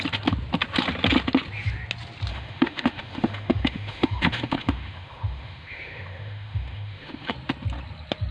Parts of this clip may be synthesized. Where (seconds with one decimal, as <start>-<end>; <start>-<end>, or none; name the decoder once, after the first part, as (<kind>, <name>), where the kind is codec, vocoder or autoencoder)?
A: 2.3-7.3 (autoencoder, DAC-VAE)